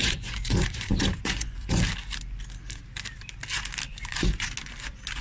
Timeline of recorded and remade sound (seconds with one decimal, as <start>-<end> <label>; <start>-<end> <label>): 0.0-1.8 remade; 1.8-3.9 recorded; 3.9-4.5 remade; 4.5-5.2 recorded